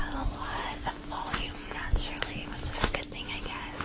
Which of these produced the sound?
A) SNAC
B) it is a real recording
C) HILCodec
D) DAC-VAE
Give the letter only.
B